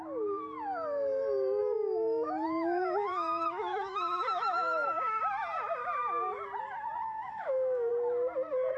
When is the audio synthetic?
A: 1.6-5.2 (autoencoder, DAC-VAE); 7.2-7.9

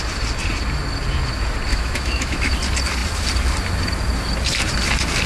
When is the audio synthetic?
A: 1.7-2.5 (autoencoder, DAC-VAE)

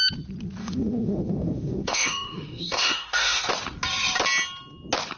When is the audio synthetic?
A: 0.6-3.5 (autoencoder, DAC-VAE)

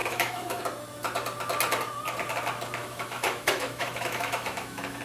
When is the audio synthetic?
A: 0.0-0.6 (autoencoder, DAC-VAE); 2.8-5.0

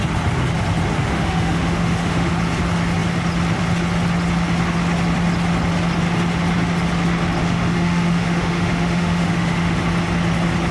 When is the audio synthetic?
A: 1.1-2.3 (autoencoder, DAC-VAE); 7.4-9.8